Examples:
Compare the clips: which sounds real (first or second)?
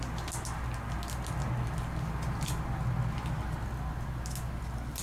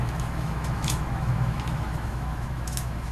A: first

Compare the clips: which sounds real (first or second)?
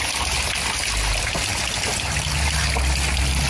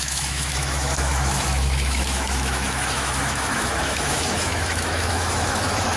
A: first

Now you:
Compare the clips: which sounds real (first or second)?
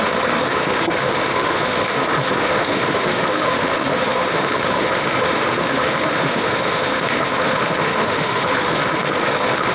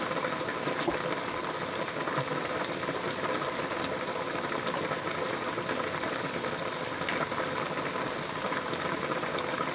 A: second